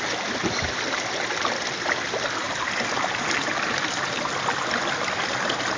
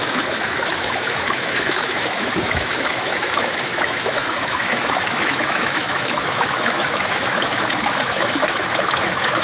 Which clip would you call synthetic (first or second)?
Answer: second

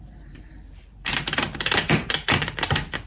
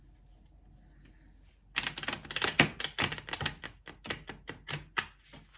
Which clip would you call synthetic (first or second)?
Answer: first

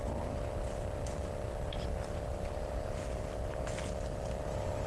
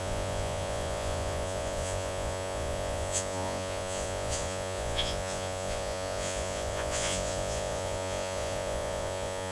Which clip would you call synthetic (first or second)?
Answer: second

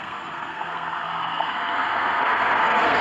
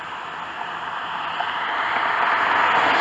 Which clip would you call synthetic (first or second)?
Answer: first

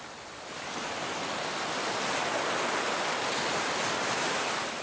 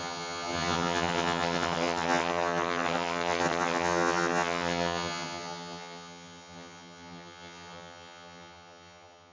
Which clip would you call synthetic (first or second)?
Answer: second